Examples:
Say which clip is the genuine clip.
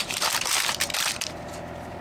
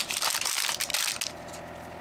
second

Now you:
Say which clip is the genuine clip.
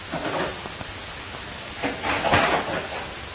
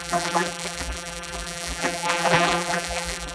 first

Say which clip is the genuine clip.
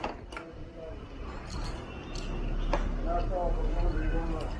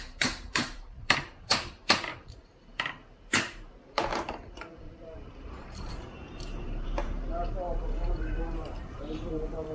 first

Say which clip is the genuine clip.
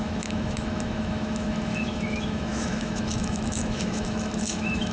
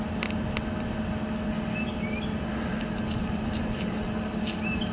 second